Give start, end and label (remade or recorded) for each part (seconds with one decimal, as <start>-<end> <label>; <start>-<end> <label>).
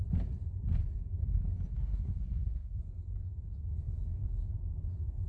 0.0-1.7 recorded; 1.7-2.8 remade; 2.8-5.3 recorded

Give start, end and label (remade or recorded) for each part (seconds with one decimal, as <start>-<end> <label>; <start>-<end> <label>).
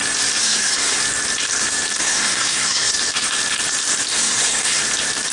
0.0-0.4 recorded; 0.4-1.0 remade; 1.0-2.0 recorded; 2.0-2.9 remade; 2.9-4.1 recorded; 4.1-4.8 remade; 4.8-5.3 recorded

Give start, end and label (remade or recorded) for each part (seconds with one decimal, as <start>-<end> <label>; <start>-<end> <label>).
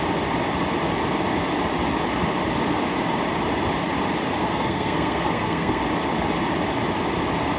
0.0-4.4 recorded; 4.4-5.8 remade; 5.8-7.6 recorded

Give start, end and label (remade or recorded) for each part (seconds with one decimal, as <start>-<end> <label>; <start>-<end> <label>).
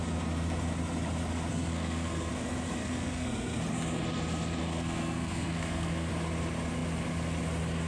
0.0-1.5 recorded; 1.5-2.3 remade; 2.3-2.8 recorded; 2.8-3.6 remade; 3.6-4.6 recorded; 4.6-6.1 remade; 6.1-7.9 recorded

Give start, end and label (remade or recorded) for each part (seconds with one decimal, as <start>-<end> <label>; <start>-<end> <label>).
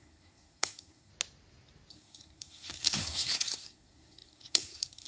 0.0-1.1 remade; 1.1-1.9 recorded; 1.9-5.1 remade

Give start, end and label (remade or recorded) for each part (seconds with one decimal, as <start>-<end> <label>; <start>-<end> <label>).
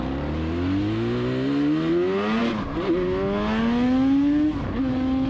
0.0-5.3 recorded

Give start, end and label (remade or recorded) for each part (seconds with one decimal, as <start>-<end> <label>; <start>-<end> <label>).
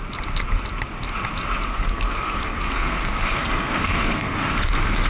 0.0-1.7 recorded; 1.7-5.1 remade